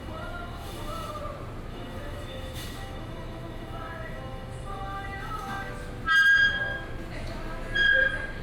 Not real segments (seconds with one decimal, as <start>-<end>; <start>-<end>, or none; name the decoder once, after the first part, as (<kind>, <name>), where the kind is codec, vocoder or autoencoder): 0.0-1.2 (autoencoder, DAC-VAE); 1.7-5.7